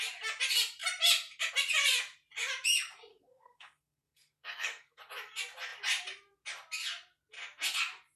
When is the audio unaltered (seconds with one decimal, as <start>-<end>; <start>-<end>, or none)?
0.0-3.1; 5.0-8.2